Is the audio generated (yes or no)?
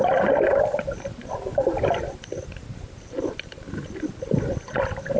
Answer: no